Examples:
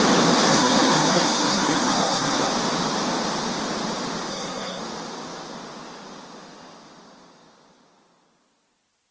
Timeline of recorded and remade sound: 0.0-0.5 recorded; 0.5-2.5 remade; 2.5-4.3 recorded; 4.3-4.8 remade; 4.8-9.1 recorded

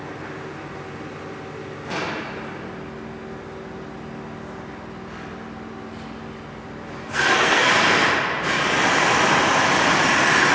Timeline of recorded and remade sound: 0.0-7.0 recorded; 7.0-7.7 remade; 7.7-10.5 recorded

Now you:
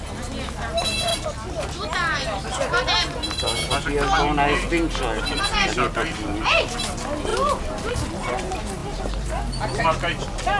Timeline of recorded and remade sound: 0.0-10.6 recorded